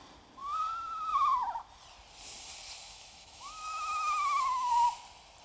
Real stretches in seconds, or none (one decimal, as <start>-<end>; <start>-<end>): 0.0-2.8; 4.7-5.4